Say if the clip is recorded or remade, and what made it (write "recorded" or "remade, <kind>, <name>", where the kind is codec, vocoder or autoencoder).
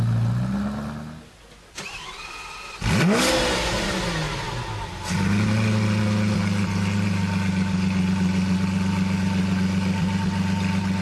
recorded